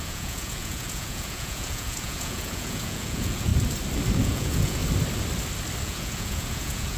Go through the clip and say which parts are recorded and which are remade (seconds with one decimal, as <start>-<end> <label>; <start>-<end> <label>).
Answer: 0.0-3.5 remade; 3.5-4.2 recorded; 4.2-4.8 remade; 4.8-5.8 recorded; 5.8-7.0 remade